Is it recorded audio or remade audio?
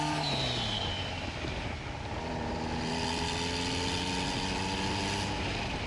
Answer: recorded